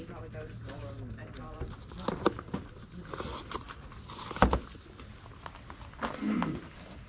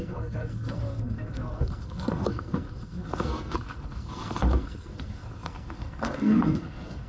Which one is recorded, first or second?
first